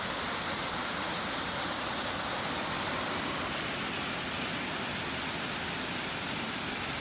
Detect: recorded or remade recorded